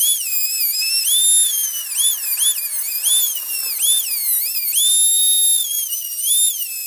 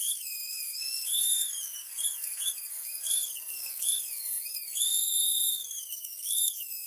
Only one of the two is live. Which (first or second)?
first